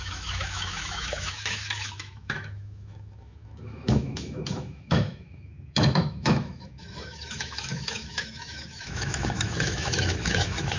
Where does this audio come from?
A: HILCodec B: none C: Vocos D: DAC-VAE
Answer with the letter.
D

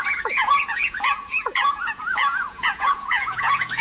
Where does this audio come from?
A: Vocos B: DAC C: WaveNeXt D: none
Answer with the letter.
A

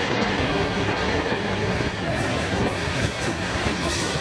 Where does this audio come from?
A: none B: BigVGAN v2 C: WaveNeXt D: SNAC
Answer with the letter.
D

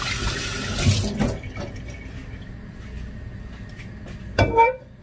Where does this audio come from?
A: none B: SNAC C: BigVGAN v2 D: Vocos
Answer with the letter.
A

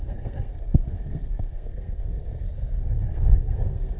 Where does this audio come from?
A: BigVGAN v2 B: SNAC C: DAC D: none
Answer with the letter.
B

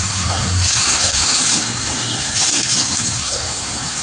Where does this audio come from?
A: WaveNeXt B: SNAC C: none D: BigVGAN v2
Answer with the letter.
B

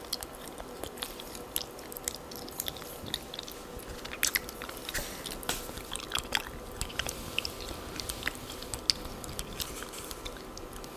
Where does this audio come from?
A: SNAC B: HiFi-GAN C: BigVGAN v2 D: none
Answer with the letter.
D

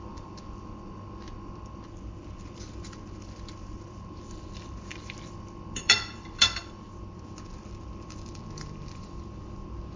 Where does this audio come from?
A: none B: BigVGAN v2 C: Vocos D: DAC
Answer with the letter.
B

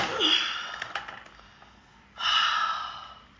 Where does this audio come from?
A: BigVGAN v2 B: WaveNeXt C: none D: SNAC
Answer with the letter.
C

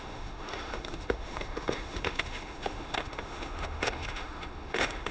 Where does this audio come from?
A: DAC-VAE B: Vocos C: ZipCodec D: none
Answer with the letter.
A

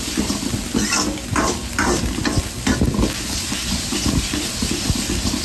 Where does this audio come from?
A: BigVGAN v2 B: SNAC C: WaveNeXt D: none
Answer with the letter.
D